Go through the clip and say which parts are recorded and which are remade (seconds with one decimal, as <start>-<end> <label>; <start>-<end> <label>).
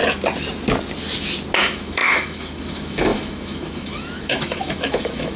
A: 0.0-1.6 recorded; 1.6-5.4 remade